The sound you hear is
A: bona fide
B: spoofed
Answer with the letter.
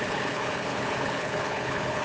B